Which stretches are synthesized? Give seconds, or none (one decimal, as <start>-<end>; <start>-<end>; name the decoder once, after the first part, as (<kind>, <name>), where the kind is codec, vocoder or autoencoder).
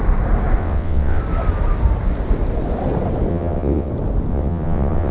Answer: 0.6-1.2 (vocoder, WaveNeXt); 3.3-3.9; 4.3-5.1